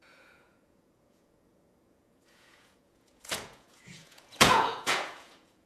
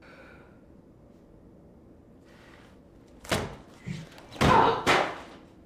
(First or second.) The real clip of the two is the second